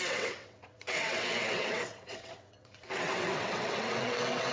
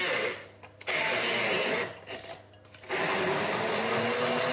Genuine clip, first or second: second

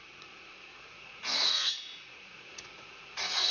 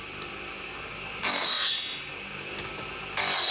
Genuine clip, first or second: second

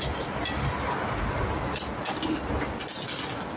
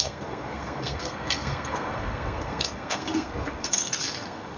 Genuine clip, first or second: first